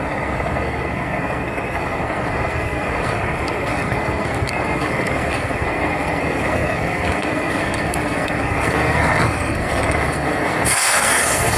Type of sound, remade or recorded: remade